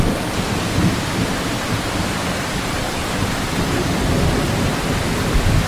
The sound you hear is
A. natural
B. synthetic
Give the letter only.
B